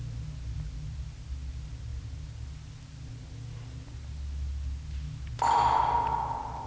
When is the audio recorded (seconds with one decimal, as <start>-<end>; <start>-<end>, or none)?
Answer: 0.0-6.7